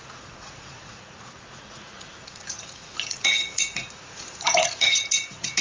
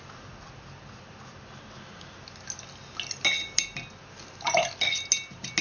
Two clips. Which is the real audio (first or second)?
second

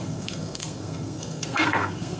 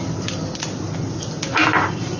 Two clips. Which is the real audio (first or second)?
second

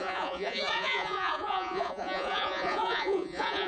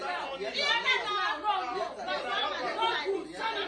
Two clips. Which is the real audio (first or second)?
second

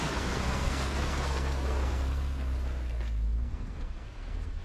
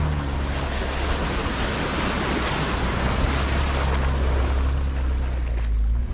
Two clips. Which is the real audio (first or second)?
second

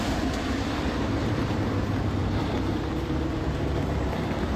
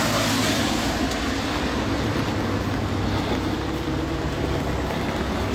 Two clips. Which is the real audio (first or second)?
second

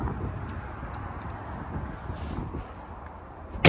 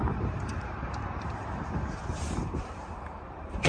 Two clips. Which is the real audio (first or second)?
first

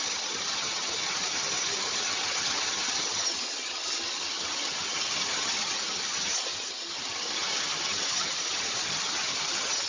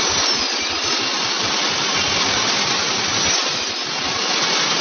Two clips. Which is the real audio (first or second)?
second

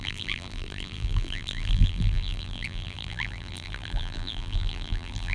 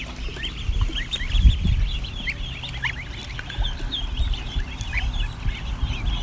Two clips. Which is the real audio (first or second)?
second